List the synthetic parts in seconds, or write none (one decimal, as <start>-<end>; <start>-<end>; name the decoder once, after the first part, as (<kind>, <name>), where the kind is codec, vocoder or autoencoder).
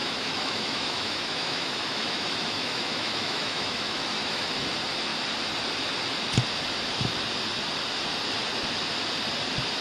0.0-4.5 (autoencoder, DAC-VAE)